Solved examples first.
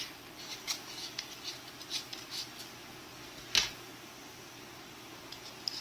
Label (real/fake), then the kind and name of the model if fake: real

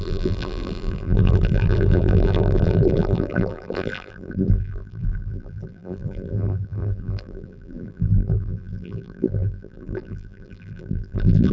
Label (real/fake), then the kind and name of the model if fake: fake, vocoder, BigVGAN v2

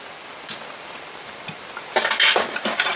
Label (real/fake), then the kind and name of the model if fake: real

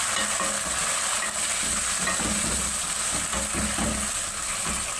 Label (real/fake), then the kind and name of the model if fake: real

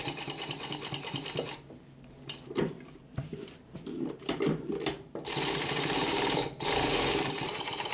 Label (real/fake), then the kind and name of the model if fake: fake, vocoder, BigVGAN v2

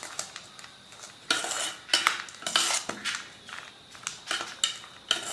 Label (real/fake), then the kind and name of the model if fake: real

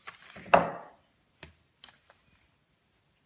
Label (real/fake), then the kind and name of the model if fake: real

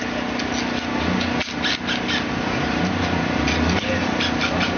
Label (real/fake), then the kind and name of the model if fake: real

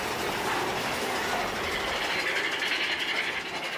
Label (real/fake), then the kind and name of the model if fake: real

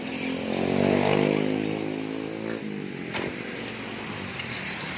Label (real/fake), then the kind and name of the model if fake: real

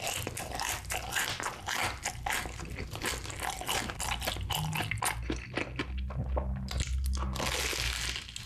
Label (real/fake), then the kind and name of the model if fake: real